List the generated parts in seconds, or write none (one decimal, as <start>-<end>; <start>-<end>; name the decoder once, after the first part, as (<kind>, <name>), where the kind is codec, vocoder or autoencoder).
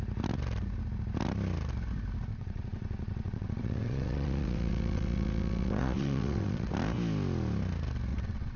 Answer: 2.3-6.7 (vocoder, WaveNeXt); 8.1-8.6